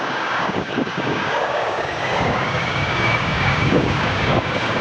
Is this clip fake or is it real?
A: fake